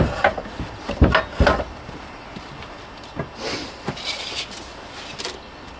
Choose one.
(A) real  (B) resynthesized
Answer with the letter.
A